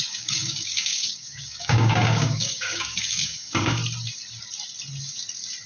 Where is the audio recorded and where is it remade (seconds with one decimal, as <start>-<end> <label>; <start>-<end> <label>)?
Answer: 0.0-3.8 remade; 3.8-5.7 recorded